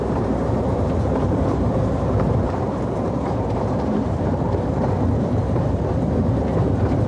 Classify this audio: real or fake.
fake